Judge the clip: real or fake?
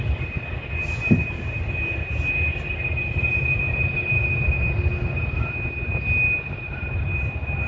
real